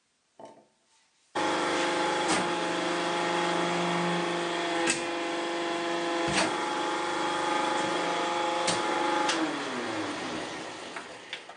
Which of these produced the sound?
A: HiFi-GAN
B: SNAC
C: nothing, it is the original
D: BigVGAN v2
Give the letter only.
C